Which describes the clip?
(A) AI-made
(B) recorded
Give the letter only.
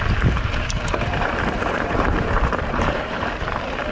A